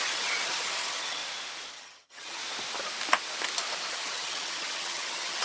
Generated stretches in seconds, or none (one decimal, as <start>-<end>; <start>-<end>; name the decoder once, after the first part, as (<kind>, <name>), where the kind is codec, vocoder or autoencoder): 0.0-1.2 (vocoder, HiFi-GAN); 1.7-2.4; 3.9-5.4